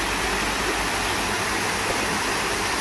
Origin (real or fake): real